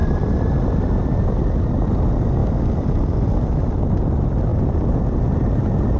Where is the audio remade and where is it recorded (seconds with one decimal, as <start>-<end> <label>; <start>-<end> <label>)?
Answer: 0.0-1.2 remade; 1.2-2.4 recorded; 2.4-3.8 remade; 3.8-6.0 recorded